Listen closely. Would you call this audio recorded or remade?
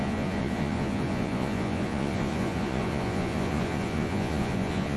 remade